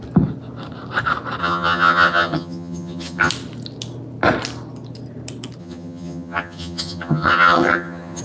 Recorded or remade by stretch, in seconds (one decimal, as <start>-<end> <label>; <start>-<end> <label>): 0.0-1.4 recorded; 1.4-3.3 remade; 3.3-5.6 recorded; 5.6-8.2 remade